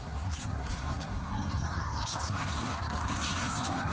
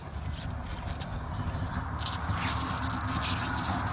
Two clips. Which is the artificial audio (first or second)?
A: first